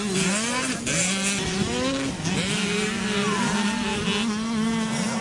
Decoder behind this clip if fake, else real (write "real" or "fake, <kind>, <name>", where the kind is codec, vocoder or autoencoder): real